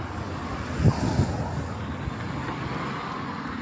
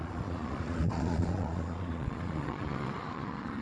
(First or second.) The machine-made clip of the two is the second